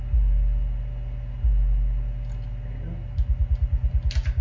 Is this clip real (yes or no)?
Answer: yes